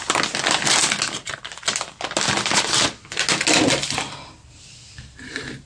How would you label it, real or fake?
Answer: real